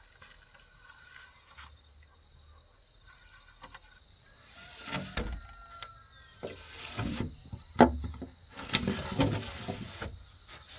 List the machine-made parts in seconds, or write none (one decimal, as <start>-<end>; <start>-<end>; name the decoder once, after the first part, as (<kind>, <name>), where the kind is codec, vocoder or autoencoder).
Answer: none